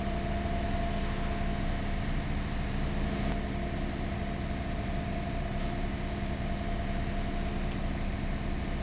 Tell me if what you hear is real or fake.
real